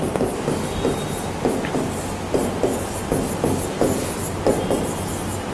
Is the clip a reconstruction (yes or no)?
no